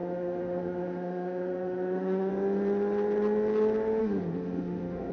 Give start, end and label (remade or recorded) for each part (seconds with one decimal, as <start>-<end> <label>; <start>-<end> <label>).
0.0-2.3 remade; 2.3-4.0 recorded; 4.0-5.1 remade